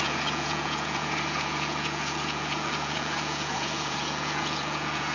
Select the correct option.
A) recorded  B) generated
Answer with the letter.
B